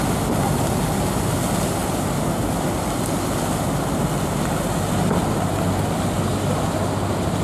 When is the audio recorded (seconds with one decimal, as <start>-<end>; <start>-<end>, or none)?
0.0-7.4